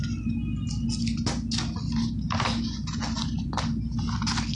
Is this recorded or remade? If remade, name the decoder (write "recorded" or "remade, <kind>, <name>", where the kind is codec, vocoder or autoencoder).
recorded